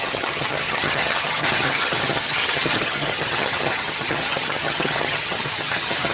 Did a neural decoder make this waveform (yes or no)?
yes